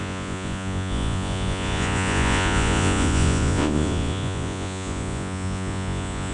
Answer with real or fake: fake